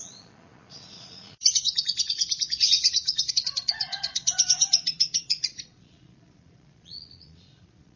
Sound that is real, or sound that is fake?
fake